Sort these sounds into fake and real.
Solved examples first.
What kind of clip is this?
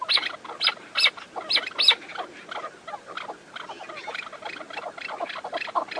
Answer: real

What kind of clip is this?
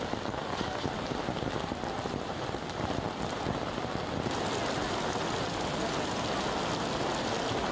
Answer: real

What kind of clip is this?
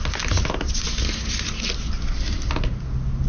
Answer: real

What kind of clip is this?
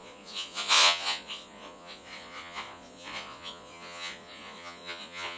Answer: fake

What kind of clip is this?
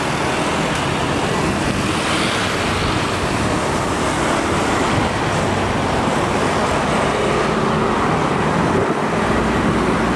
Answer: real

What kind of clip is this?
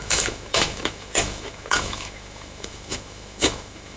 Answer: fake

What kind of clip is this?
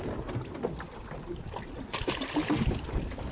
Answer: real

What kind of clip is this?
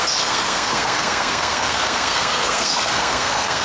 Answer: fake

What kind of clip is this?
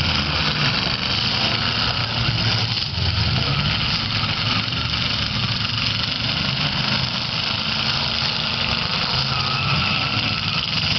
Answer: real